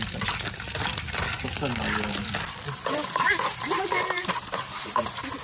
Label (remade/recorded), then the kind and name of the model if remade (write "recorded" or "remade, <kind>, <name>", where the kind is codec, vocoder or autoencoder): recorded